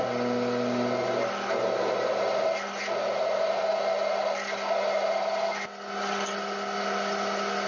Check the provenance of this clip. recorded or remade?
recorded